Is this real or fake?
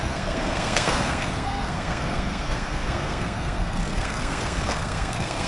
fake